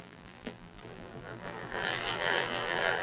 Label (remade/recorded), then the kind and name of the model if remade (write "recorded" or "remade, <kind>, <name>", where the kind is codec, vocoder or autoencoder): remade, vocoder, BigVGAN v2